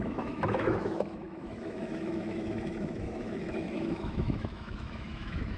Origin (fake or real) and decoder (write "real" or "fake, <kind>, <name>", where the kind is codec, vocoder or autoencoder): fake, autoencoder, DAC-VAE